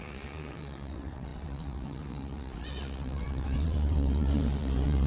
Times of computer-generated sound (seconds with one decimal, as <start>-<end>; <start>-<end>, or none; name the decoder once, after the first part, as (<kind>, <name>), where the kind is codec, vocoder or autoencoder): 0.0-5.1 (vocoder, WaveNeXt)